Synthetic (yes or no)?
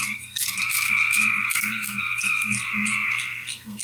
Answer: yes